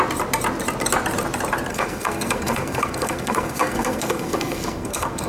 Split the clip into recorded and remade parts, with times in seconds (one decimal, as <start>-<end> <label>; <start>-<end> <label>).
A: 0.0-1.7 recorded; 1.7-5.3 remade